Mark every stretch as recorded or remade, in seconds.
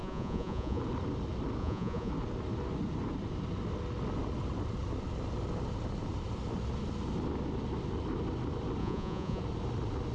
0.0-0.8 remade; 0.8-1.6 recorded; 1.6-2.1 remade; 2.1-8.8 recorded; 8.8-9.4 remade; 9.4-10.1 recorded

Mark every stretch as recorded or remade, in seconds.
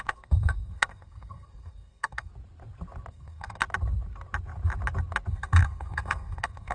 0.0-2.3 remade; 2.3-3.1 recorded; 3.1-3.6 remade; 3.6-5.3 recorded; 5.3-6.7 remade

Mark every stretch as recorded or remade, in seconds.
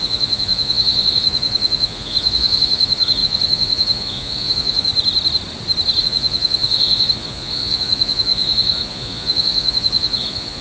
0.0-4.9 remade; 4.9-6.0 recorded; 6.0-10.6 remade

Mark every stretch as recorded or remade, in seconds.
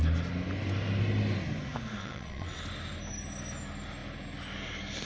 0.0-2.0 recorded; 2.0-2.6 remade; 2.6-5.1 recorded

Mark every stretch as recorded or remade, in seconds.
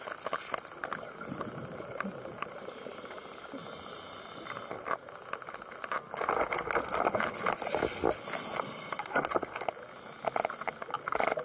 0.0-11.4 recorded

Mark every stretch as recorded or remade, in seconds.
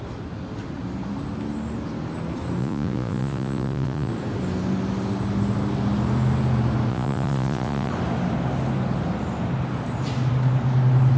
0.0-2.6 recorded; 2.6-4.1 remade; 4.1-6.9 recorded; 6.9-7.9 remade; 7.9-11.2 recorded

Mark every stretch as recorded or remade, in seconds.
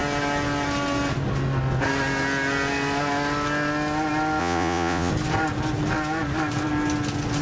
0.0-4.4 recorded; 4.4-5.1 remade; 5.1-7.4 recorded